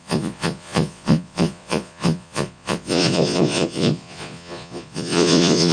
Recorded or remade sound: remade